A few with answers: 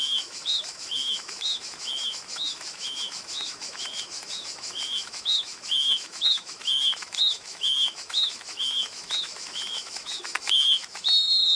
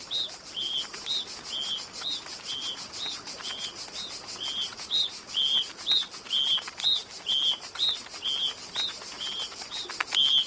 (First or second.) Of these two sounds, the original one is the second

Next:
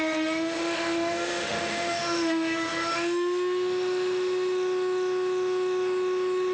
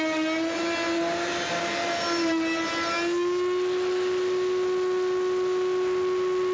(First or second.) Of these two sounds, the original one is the second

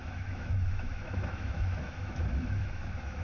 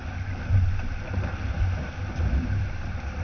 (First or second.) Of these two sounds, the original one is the second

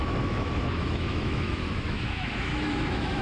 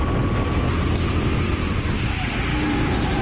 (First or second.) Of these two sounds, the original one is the second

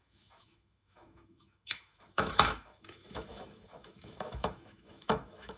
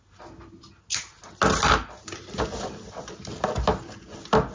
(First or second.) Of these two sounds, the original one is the second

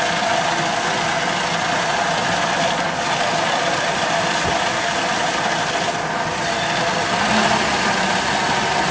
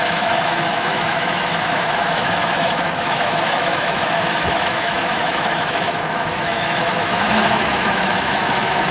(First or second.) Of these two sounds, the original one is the first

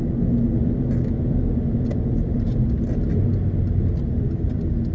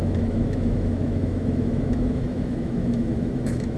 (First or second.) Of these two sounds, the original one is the first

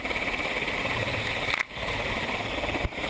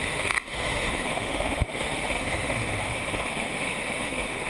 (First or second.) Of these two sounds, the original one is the first